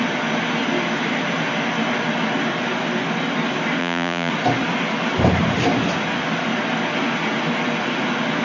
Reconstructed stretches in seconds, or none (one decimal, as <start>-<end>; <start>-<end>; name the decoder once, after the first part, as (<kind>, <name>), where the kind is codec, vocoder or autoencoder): 3.8-4.3 (vocoder, Vocos)